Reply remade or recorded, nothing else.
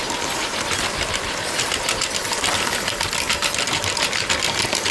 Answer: recorded